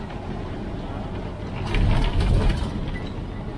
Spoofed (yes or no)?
no